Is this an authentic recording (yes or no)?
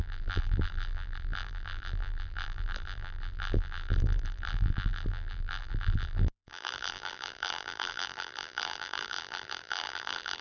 no